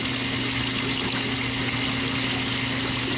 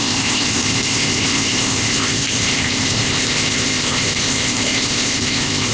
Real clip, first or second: first